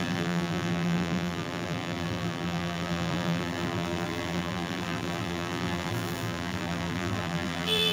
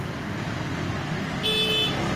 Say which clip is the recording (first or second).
second